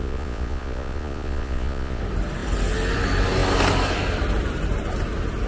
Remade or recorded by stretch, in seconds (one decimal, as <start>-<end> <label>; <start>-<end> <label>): 0.0-2.0 remade; 2.0-5.5 recorded